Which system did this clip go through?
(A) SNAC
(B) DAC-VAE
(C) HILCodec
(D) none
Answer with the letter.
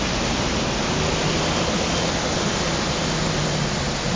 D